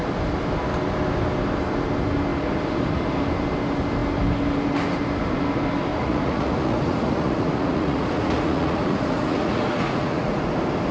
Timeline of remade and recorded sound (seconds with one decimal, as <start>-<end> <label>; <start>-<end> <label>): 0.0-5.9 recorded; 5.9-10.4 remade; 10.4-10.9 recorded